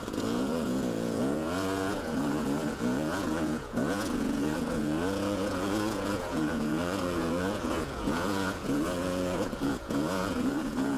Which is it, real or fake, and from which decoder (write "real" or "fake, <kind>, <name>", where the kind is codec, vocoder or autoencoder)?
fake, vocoder, Vocos